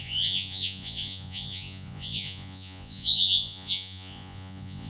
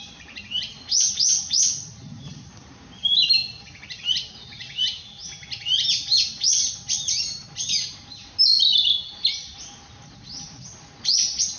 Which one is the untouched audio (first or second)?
second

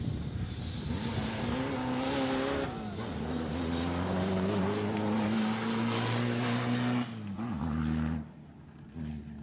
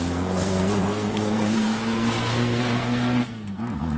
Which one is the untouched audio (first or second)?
first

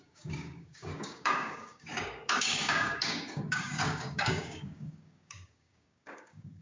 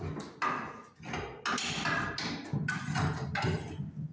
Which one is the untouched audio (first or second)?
second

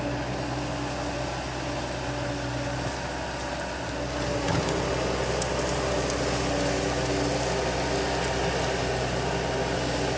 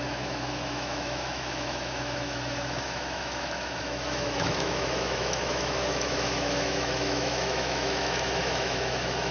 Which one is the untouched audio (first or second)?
first